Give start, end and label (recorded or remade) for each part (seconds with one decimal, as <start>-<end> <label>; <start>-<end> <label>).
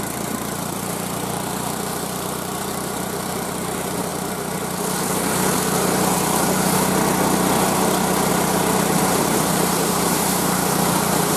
0.0-4.1 remade; 4.1-8.3 recorded; 8.3-11.4 remade